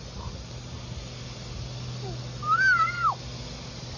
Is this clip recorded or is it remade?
recorded